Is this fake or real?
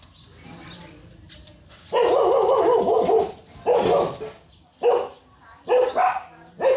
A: real